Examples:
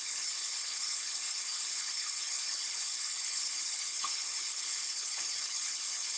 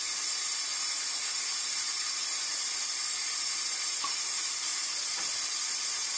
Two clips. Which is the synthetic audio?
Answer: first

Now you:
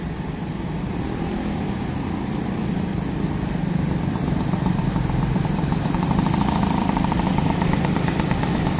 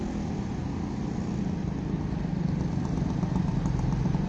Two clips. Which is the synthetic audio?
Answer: first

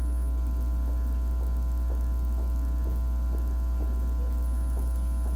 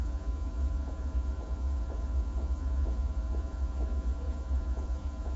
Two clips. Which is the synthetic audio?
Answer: second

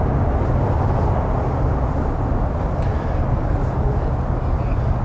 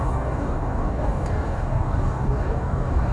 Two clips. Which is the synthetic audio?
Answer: second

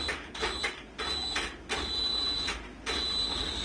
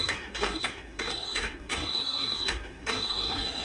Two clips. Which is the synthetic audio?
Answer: second